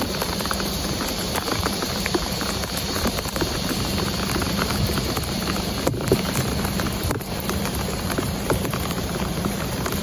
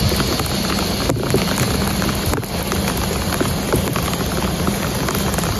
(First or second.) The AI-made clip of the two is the first